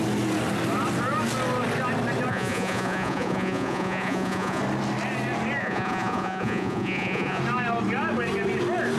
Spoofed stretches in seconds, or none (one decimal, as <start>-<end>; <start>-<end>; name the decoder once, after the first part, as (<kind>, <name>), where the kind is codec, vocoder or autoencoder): 2.3-4.6 (vocoder, Vocos); 5.6-7.4